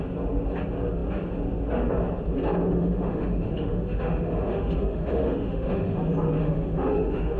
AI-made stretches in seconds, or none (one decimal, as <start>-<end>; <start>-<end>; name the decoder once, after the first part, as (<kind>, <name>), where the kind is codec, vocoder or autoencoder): 2.7-6.0 (autoencoder, DAC-VAE); 6.4-7.4